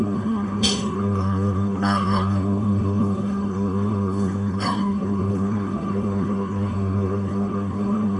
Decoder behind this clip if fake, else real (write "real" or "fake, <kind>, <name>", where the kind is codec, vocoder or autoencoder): fake, codec, SNAC